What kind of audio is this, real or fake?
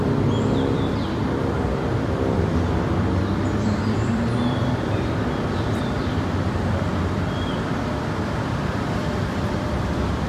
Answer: fake